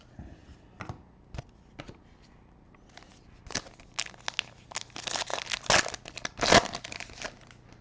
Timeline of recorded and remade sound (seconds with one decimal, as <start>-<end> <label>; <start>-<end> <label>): 0.0-7.8 recorded